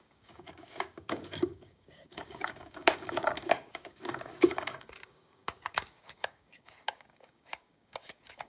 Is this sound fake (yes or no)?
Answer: yes